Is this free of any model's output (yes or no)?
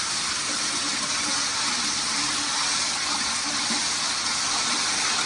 yes